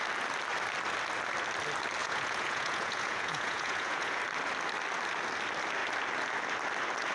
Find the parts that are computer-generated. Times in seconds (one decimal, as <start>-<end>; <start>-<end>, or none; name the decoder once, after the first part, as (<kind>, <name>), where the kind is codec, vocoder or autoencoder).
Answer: 2.0-4.2 (vocoder, Vocos)